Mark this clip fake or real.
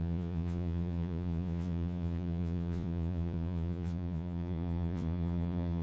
fake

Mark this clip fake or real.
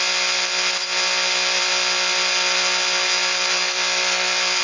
real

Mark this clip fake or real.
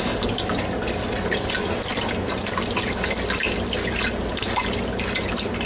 real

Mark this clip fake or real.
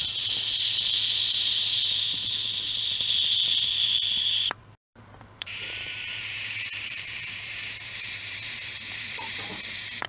fake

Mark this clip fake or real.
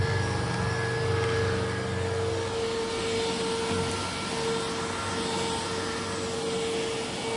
real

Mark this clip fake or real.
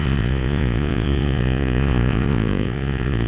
fake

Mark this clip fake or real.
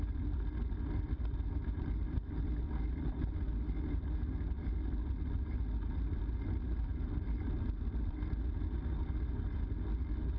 real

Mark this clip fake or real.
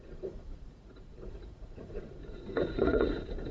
fake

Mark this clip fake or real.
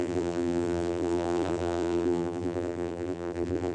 fake